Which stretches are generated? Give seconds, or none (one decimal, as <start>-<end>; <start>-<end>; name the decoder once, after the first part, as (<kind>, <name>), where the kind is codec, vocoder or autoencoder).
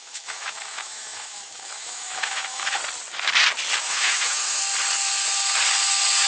0.0-2.8 (autoencoder, DAC-VAE); 3.8-4.6